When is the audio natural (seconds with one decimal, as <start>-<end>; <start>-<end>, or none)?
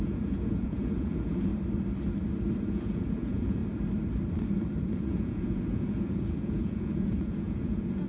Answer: 1.5-2.6; 3.6-4.8